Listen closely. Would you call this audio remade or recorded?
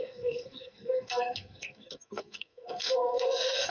remade